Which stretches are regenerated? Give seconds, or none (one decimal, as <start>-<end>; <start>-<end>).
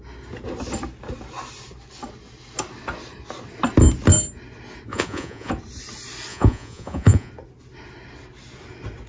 4.9-5.5; 6.3-7.3